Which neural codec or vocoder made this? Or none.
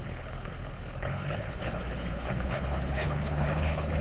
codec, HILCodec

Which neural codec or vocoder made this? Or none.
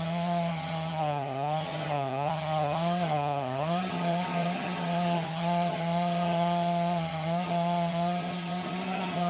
vocoder, HiFi-GAN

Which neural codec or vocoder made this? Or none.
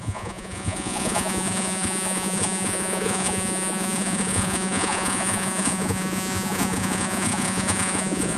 vocoder, Vocos